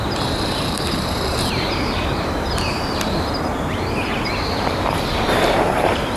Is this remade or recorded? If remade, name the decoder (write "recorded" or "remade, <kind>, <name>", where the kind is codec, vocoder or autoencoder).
remade, vocoder, BigVGAN v2